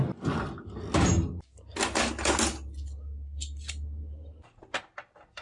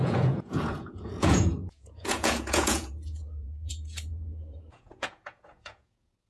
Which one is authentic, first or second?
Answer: first